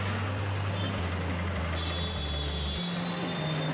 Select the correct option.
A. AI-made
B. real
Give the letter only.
B